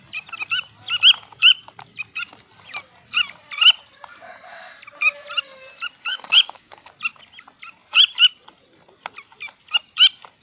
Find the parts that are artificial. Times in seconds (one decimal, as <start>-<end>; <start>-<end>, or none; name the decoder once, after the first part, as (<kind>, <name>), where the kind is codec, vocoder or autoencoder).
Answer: 6.1-6.9 (codec, DAC)

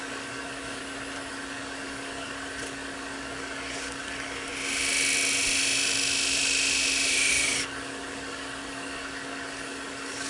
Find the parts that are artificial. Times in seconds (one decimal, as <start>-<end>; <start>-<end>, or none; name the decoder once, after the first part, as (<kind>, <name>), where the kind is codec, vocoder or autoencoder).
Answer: 0.0-0.8 (codec, DAC); 1.3-4.5; 7.3-10.3

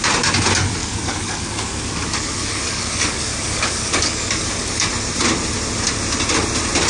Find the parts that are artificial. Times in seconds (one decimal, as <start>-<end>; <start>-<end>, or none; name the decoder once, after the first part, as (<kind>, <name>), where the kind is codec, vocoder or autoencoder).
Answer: 0.8-4.9 (codec, DAC)